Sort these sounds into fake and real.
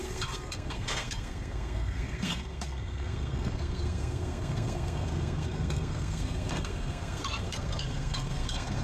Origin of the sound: fake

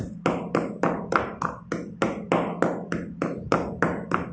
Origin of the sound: real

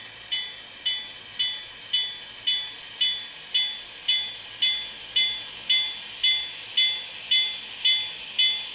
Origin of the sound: real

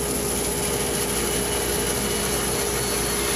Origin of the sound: real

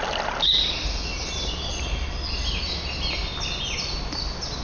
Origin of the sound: real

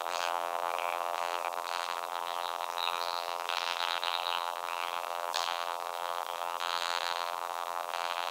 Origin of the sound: fake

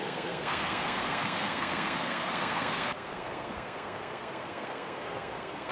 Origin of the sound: fake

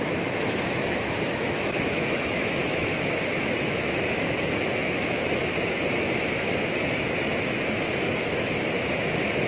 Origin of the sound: fake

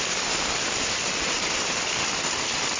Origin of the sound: real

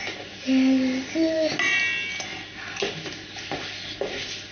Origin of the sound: real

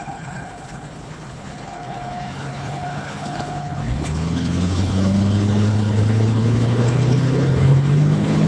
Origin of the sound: fake